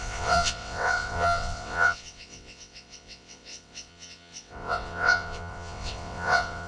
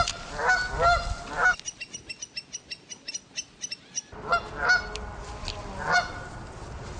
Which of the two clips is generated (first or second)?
first